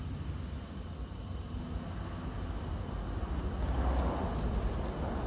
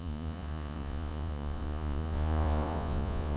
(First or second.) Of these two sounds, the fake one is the second